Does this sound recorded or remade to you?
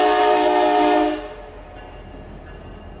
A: recorded